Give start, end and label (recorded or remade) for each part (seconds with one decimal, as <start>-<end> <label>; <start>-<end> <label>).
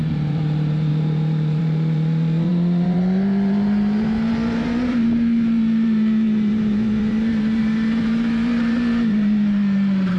0.0-10.2 remade